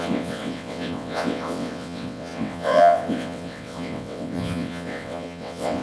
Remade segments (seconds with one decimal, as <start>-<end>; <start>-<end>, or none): 0.0-5.8